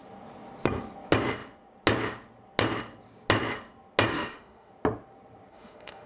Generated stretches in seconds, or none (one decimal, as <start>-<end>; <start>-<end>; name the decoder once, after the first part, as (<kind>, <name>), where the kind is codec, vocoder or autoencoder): 4.1-4.7 (autoencoder, DAC-VAE); 5.5-6.1